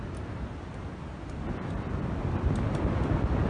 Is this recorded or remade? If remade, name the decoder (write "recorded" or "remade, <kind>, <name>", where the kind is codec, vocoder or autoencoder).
recorded